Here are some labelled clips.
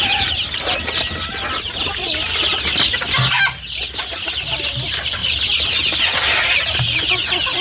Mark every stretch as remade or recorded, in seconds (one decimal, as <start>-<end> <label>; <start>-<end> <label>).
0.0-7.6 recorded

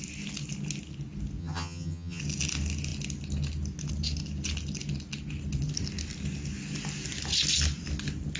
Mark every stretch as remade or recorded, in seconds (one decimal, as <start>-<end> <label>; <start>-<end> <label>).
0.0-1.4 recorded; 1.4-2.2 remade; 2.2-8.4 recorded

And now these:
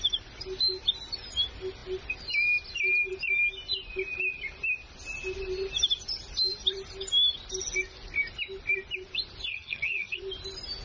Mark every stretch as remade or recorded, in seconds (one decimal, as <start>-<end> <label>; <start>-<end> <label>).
0.0-9.5 recorded; 9.5-10.2 remade; 10.2-10.8 recorded

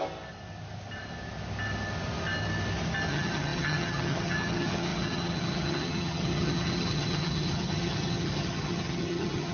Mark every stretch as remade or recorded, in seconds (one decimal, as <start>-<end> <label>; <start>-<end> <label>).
0.0-3.1 recorded; 3.1-9.5 remade